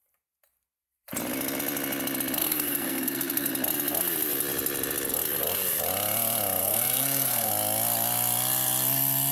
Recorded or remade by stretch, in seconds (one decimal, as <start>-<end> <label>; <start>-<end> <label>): 0.0-2.4 recorded; 2.4-3.5 remade; 3.5-6.6 recorded; 6.6-7.5 remade; 7.5-9.3 recorded